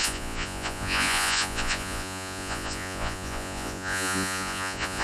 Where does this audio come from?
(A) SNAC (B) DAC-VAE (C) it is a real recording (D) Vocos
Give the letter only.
D